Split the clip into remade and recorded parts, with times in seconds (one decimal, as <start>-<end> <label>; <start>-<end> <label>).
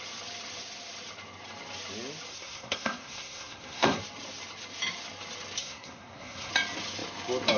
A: 0.0-2.3 recorded; 2.3-4.0 remade; 4.0-5.6 recorded; 5.6-6.5 remade; 6.5-7.6 recorded